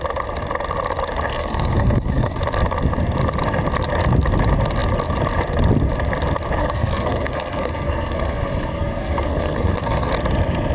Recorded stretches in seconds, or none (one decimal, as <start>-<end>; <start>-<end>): 0.0-1.3; 2.4-6.6; 10.1-10.7